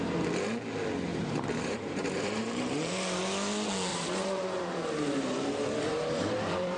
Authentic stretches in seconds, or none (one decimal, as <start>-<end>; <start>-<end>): 0.0-1.1; 3.2-3.9